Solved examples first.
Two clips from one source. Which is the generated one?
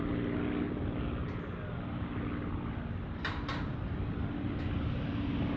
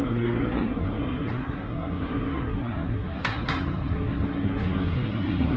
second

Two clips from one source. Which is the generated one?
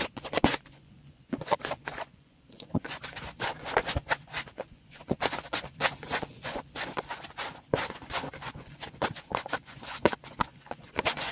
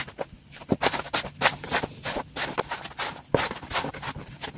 first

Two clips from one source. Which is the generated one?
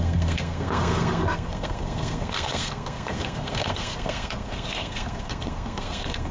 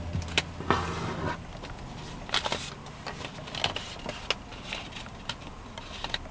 first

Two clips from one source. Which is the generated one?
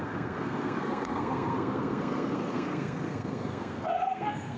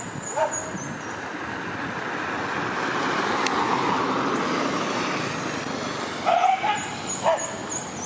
first